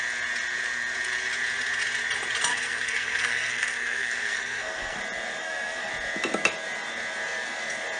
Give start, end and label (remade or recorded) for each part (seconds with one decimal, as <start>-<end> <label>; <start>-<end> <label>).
0.0-2.5 recorded; 2.5-5.0 remade; 5.0-5.4 recorded; 5.4-5.9 remade; 5.9-8.0 recorded